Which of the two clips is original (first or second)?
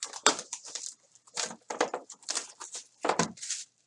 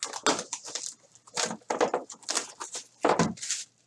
second